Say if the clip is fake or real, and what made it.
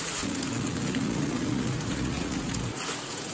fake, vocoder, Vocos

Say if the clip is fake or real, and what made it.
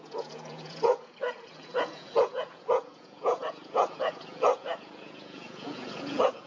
fake, vocoder, Vocos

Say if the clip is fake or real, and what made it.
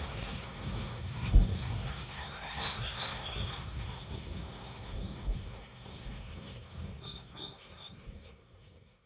fake, codec, SNAC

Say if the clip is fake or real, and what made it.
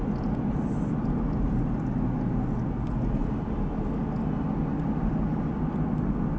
real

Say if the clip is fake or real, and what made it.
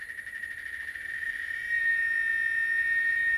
real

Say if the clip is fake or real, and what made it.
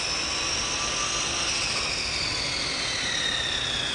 real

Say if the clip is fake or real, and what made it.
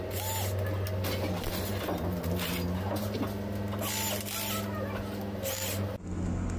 real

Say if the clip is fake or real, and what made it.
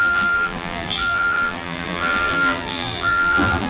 fake, vocoder, BigVGAN v2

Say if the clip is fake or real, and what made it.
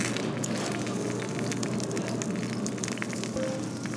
real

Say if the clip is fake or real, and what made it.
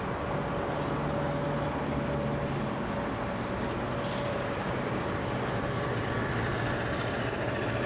real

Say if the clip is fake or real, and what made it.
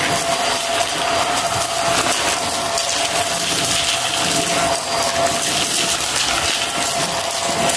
real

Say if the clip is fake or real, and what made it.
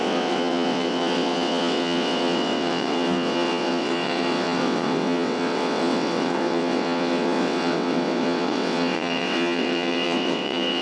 fake, vocoder, WaveNeXt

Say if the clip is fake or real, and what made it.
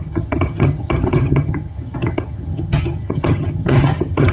fake, vocoder, HiFi-GAN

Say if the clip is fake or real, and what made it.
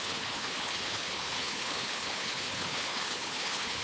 fake, codec, HILCodec